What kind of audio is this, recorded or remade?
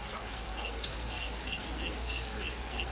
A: remade